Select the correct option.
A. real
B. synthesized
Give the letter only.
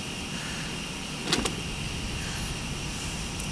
A